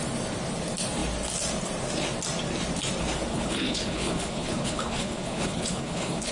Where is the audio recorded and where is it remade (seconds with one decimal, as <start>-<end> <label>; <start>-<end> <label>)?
0.0-3.3 recorded; 3.3-6.3 remade